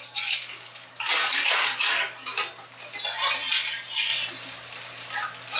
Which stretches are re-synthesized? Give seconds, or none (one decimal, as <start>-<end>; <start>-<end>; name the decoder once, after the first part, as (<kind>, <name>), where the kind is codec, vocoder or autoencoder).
0.0-2.4 (codec, DAC)